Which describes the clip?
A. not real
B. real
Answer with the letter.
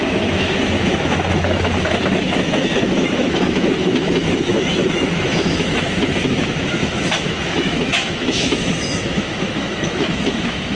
A